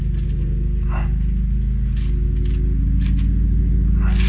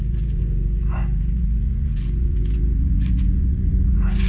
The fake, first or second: second